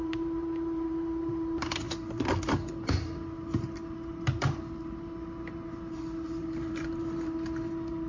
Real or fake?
fake